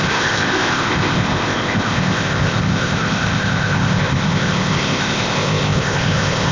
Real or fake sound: fake